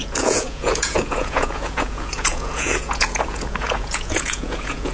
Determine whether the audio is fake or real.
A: fake